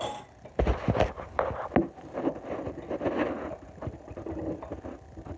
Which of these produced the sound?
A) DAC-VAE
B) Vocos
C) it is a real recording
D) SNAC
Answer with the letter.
C